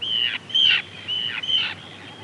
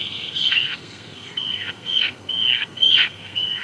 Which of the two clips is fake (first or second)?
second